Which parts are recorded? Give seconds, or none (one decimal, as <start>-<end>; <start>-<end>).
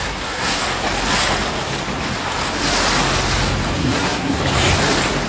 0.6-3.8; 4.4-5.3